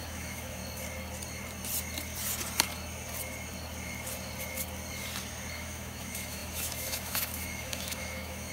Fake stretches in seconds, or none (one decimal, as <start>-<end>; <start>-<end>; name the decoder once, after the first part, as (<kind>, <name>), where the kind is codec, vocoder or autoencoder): 0.0-0.6 (autoencoder, DAC-VAE); 5.5-8.5